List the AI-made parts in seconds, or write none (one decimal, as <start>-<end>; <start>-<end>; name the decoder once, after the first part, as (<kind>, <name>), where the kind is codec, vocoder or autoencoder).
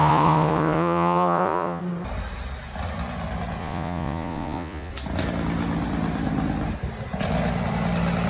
0.0-1.8 (vocoder, Vocos); 3.6-4.9